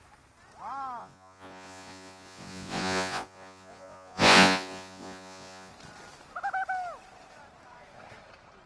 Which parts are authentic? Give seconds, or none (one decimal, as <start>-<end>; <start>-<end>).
0.0-1.0; 5.7-8.7